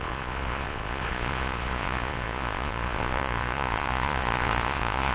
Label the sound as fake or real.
fake